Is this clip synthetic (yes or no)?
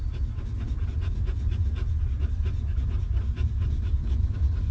no